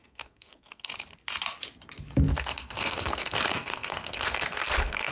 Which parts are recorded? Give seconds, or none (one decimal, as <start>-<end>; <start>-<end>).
0.9-2.3